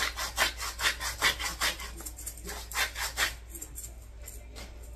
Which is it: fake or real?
real